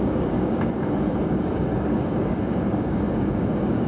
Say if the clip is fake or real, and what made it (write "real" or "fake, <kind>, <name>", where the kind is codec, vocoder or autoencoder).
fake, codec, DAC